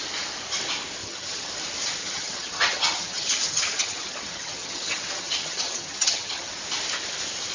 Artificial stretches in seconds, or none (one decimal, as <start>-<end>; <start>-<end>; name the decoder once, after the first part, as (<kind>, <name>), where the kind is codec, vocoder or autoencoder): 1.0-1.5 (vocoder, HiFi-GAN); 2.0-6.5

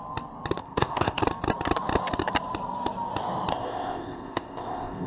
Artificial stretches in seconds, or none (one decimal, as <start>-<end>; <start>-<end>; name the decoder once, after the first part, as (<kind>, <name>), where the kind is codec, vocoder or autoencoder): 0.6-1.2 (codec, ZipCodec); 3.5-5.1

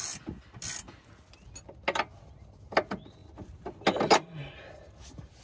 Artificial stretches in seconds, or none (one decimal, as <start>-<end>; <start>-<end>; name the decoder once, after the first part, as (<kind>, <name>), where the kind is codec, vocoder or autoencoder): none

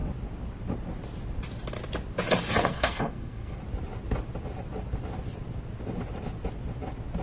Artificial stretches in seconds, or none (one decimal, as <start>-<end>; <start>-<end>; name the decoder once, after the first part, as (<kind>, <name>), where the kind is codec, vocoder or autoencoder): 2.6-3.6 (codec, SNAC)

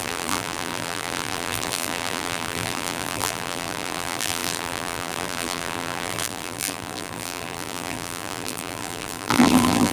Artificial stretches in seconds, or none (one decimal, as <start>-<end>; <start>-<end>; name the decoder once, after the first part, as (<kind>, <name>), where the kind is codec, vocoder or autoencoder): 0.0-9.9 (vocoder, BigVGAN v2)

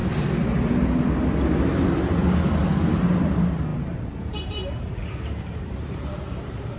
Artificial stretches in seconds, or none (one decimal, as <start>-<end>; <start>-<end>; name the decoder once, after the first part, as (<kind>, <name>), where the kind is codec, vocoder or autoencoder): 3.3-6.8 (vocoder, BigVGAN v2)

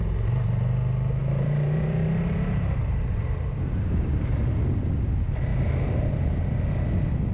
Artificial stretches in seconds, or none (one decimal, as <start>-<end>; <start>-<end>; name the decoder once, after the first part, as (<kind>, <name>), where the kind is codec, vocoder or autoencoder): 1.2-4.4 (vocoder, BigVGAN v2); 5.5-6.4

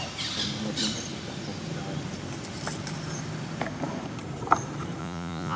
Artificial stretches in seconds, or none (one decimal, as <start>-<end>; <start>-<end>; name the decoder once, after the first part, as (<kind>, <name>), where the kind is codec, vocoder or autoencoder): 5.0-5.6 (vocoder, Vocos)